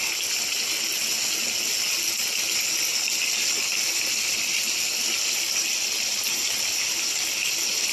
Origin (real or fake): real